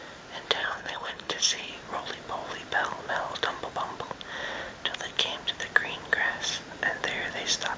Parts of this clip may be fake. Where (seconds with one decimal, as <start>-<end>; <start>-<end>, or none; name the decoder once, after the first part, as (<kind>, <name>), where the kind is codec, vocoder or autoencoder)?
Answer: 0.6-1.7 (codec, HILCodec)